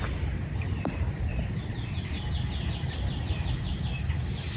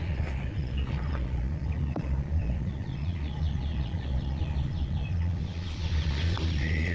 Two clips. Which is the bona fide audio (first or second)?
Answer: first